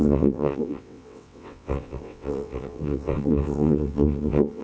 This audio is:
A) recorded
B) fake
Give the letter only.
B